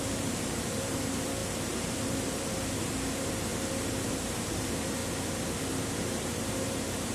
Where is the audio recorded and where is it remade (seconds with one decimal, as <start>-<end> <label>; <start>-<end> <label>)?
0.0-3.5 remade; 3.5-4.1 recorded; 4.1-5.0 remade; 5.0-5.7 recorded; 5.7-7.1 remade